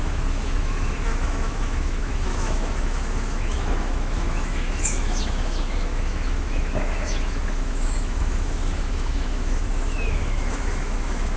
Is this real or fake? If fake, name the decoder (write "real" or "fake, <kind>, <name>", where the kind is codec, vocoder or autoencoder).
fake, autoencoder, DAC-VAE